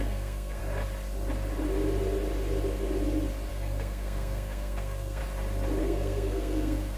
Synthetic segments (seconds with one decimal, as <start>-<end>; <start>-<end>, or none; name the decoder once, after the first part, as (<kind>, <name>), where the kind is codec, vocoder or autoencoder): 0.0-0.6 (codec, SNAC); 3.5-5.2; 5.8-7.0